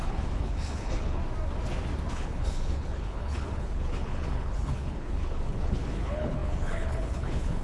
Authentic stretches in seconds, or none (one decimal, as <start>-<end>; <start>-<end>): 1.2-2.1